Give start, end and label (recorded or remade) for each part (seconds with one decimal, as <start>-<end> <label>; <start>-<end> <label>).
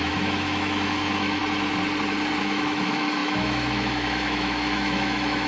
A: 0.0-1.4 remade; 1.4-2.4 recorded; 2.4-5.5 remade